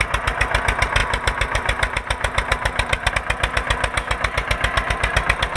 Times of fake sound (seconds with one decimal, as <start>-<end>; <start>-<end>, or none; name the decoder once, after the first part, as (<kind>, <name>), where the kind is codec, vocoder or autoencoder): 1.0-3.1 (vocoder, BigVGAN v2)